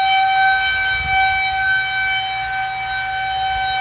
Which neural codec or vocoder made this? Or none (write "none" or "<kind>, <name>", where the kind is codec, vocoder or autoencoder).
none